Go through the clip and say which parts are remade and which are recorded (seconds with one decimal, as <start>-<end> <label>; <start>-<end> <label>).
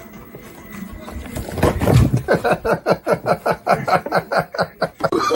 0.0-4.3 recorded; 4.3-5.3 remade